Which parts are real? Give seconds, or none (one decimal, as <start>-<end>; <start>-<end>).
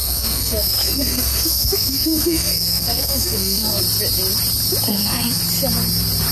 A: 3.8-4.9; 5.4-6.3